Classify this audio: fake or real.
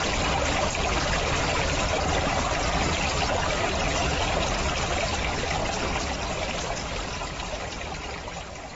real